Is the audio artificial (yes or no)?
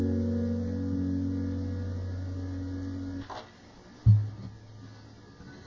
no